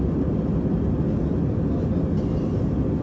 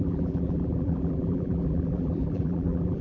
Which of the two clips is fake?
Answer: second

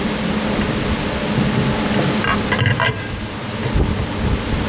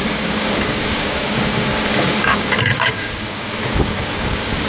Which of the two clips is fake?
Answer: second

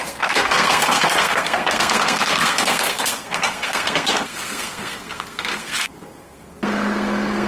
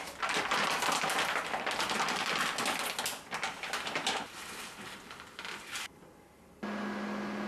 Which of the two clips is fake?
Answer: first